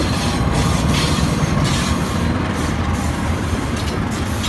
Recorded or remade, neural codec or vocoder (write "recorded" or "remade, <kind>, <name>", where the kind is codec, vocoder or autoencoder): remade, vocoder, BigVGAN v2